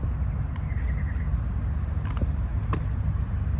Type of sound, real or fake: real